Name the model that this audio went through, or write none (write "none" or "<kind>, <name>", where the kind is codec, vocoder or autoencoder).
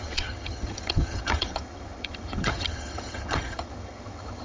vocoder, HiFi-GAN